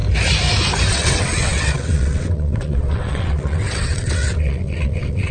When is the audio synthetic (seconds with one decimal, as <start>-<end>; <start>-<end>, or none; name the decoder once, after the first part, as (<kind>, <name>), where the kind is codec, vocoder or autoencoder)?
0.9-5.3 (vocoder, WaveNeXt)